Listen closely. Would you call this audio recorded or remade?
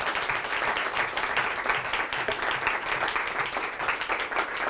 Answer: recorded